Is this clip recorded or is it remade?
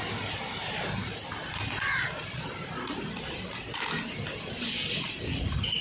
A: recorded